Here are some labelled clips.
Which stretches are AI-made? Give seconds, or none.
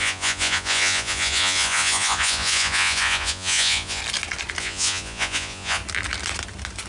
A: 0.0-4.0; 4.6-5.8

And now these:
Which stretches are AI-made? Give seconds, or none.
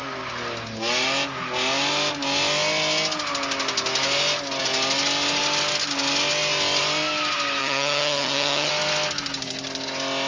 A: 7.6-8.7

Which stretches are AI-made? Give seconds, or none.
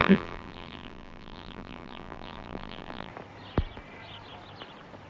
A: 0.0-3.1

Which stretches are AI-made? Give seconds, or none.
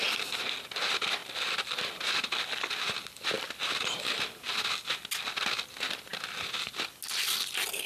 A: none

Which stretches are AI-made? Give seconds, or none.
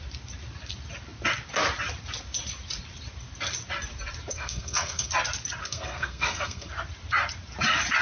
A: 4.3-5.1; 5.6-6.7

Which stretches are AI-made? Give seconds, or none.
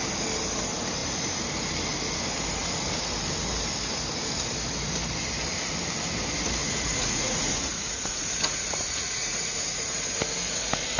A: 6.6-10.0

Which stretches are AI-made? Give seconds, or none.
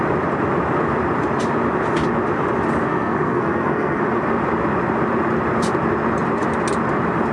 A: 2.9-4.0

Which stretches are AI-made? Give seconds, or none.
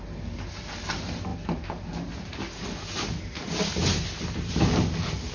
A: none